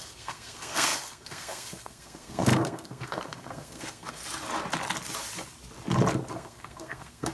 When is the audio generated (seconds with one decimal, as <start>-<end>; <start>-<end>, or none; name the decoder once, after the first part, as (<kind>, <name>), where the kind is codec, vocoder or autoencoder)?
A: 0.0-4.2 (codec, SNAC); 6.3-7.3